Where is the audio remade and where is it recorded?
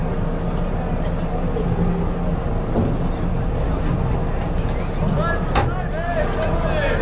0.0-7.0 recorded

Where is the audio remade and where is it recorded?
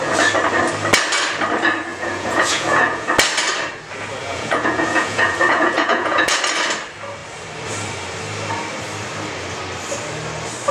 0.0-1.9 recorded; 1.9-3.1 remade; 3.1-4.2 recorded; 4.2-6.4 remade; 6.4-10.7 recorded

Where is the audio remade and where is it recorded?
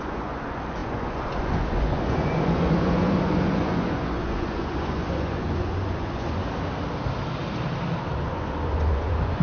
0.0-6.4 remade; 6.4-8.2 recorded; 8.2-9.4 remade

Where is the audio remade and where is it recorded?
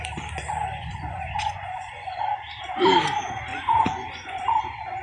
0.0-0.8 recorded; 0.8-2.3 remade; 2.3-3.5 recorded; 3.5-4.6 remade; 4.6-5.0 recorded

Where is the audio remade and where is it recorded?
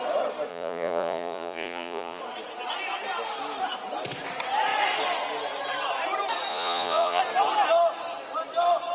0.0-0.5 recorded; 0.5-2.2 remade; 2.2-6.5 recorded; 6.5-7.2 remade; 7.2-8.9 recorded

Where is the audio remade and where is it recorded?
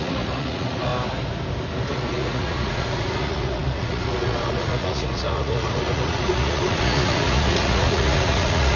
0.0-0.9 remade; 0.9-1.9 recorded; 1.9-8.8 remade